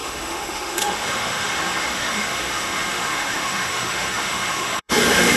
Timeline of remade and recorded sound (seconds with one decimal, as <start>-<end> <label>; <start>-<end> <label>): 0.0-5.4 remade